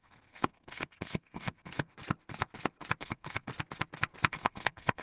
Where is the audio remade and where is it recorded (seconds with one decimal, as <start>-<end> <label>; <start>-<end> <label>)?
0.0-1.9 remade; 1.9-3.0 recorded; 3.0-3.5 remade; 3.5-4.3 recorded; 4.3-5.0 remade